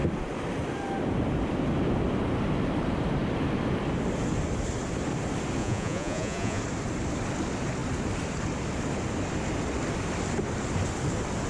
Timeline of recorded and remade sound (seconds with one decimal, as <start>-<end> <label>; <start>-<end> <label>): 0.0-5.6 recorded; 5.6-6.6 remade; 6.6-11.5 recorded